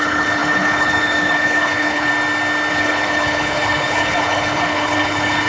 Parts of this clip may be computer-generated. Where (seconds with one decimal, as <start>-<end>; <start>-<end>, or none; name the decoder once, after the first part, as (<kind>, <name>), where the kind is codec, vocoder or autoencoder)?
0.0-2.1 (codec, HILCodec); 2.7-5.5

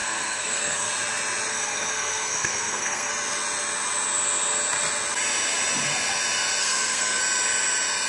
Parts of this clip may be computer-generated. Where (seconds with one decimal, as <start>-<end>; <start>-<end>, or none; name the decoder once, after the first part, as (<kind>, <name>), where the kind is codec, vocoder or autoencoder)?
0.0-0.9 (codec, SNAC); 1.5-3.1; 6.6-7.2

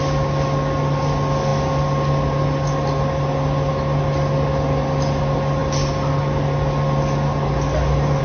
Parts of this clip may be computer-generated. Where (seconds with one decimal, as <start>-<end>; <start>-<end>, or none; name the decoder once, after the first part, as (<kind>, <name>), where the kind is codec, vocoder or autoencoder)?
none

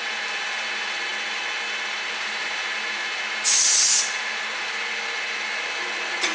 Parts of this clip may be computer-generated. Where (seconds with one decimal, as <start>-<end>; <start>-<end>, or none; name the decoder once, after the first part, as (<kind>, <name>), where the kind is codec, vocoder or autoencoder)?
none

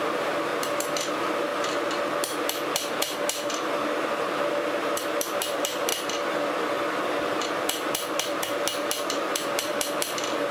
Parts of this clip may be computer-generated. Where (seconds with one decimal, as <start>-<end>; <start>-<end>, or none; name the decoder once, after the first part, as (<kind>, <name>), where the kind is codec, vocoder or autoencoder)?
0.0-0.5 (vocoder, BigVGAN v2); 1.1-1.5; 5.4-5.9; 7.6-10.5

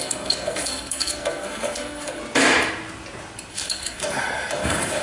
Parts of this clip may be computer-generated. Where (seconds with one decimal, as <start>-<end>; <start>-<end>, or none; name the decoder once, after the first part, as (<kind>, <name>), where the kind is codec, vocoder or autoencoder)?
0.0-2.2 (codec, SNAC); 3.5-5.0

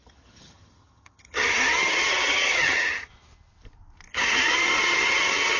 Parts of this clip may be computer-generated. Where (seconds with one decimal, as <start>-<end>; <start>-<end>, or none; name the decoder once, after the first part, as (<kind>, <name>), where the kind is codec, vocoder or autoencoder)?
0.0-3.1 (vocoder, HiFi-GAN); 4.1-5.6

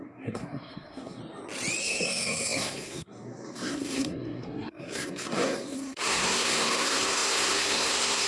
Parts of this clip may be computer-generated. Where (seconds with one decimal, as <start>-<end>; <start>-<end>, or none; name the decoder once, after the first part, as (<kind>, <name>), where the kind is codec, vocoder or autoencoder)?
0.0-1.2 (codec, SNAC); 1.8-8.3